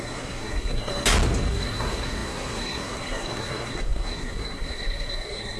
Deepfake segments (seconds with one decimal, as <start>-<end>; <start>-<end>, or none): 0.0-0.9; 1.5-5.6